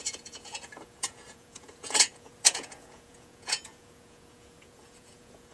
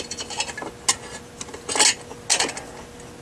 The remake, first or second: first